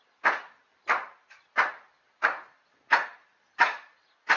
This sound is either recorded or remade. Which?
recorded